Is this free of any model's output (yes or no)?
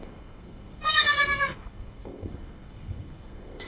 no